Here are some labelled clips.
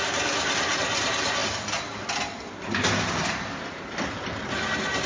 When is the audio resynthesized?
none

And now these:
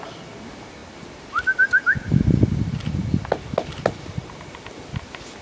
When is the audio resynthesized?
none

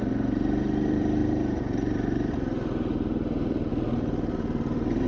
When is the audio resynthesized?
0.0-5.1

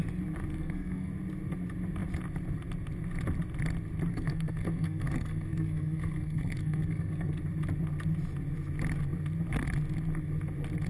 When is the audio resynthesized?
0.5-1.1; 4.1-7.4

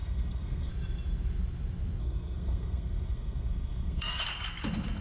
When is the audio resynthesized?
0.0-0.7; 2.0-4.2

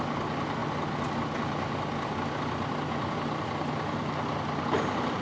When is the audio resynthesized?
none

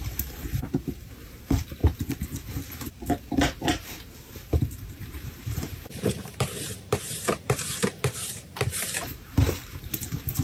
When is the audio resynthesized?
0.0-1.8; 2.9-10.4